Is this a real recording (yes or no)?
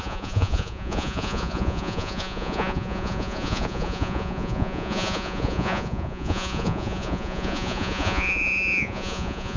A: no